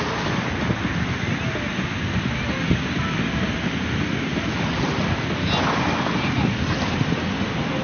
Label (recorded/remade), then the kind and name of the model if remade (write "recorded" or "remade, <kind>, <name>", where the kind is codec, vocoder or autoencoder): recorded